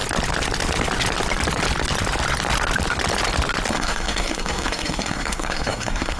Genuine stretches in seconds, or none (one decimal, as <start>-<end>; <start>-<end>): 0.0-3.7

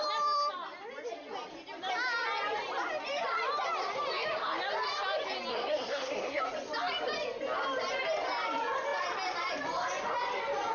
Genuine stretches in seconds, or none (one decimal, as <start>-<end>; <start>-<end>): 0.0-5.5; 6.4-10.7

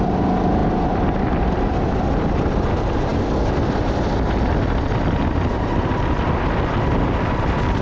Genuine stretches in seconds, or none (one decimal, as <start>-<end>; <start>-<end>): 0.0-7.8

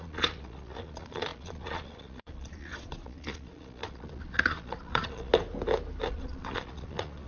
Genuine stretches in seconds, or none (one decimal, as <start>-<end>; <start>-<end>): 5.3-6.1

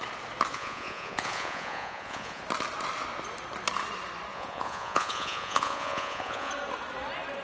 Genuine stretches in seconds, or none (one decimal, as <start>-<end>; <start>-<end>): 0.0-0.5; 2.4-4.3; 6.5-7.4